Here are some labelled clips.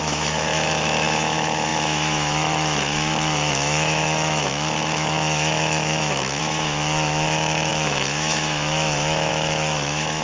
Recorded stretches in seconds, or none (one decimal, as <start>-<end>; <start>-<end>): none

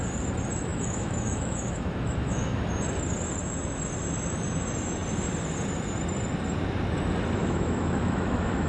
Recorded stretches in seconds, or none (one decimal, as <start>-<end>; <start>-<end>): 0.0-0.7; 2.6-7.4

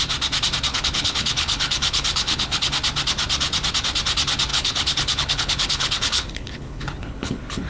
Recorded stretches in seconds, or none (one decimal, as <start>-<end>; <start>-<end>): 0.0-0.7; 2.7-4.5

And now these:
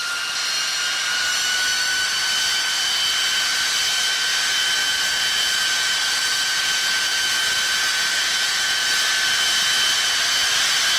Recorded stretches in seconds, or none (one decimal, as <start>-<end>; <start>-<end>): 0.0-4.8; 8.9-11.0